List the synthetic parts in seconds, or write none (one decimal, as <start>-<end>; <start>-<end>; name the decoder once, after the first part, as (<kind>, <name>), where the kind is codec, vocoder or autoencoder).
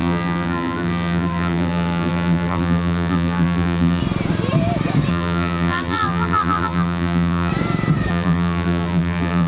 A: 0.0-4.0 (vocoder, BigVGAN v2); 5.1-7.5; 8.1-9.5